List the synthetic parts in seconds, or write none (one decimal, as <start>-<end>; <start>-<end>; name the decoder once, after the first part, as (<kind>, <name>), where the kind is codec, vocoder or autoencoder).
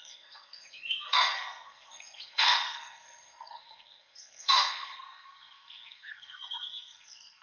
0.0-7.4 (codec, SNAC)